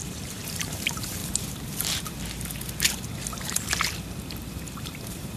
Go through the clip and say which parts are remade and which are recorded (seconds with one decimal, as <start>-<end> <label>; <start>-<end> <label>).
0.0-1.2 remade; 1.2-4.3 recorded; 4.3-5.4 remade